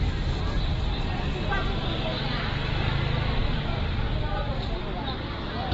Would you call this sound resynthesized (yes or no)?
no